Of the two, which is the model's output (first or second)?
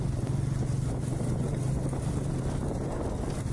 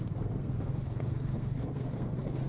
second